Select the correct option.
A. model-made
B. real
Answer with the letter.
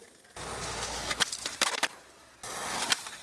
B